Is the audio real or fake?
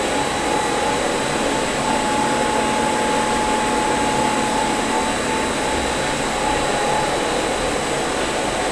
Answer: real